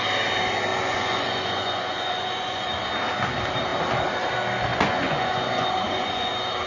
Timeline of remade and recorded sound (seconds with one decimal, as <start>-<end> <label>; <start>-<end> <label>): 0.0-0.7 recorded; 0.7-2.7 remade; 2.7-4.7 recorded; 4.7-6.3 remade; 6.3-6.7 recorded